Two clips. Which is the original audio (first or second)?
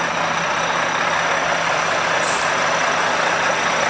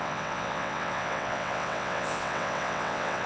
first